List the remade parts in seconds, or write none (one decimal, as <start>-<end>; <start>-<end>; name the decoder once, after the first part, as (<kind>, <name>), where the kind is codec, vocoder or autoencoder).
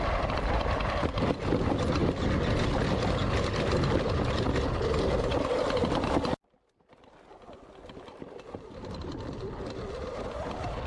none